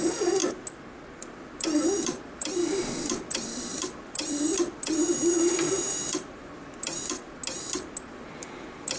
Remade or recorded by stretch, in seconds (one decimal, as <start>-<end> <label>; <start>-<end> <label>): 0.0-0.4 remade; 0.4-1.2 recorded; 1.2-7.4 remade; 7.4-8.0 recorded; 8.0-9.0 remade